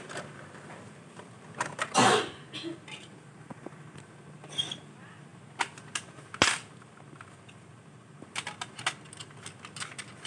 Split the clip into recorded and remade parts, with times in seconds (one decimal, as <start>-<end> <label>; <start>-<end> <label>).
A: 0.0-10.3 recorded